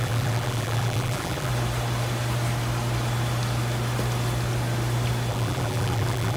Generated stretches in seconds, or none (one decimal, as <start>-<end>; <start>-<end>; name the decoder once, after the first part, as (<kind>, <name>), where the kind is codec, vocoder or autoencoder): 0.0-1.5 (vocoder, BigVGAN v2); 5.3-6.4